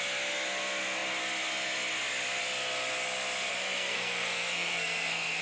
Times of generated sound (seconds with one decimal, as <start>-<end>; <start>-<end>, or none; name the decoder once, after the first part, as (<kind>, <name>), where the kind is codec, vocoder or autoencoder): 3.5-5.4 (codec, SNAC)